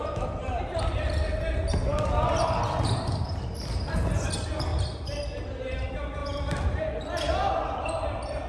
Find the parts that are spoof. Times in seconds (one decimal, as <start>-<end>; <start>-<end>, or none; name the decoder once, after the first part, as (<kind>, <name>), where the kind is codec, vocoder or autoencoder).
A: 6.2-7.0 (vocoder, BigVGAN v2)